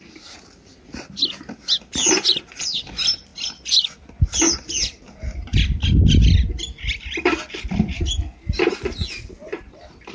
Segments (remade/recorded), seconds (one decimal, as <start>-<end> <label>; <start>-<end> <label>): 0.0-10.1 recorded